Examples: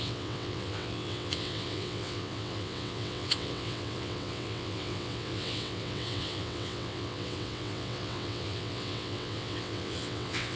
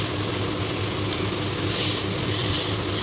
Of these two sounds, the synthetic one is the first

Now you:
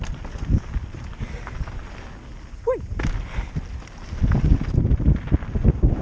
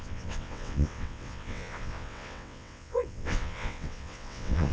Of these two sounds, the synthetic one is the second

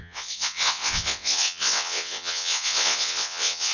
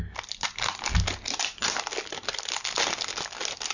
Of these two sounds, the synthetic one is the first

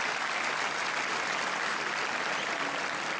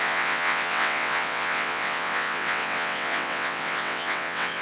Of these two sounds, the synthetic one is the second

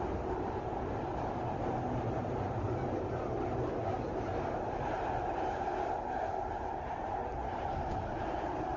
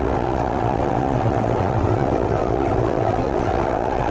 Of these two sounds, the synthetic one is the second